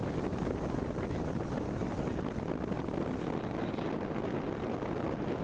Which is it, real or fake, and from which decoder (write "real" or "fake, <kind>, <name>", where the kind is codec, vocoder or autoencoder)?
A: real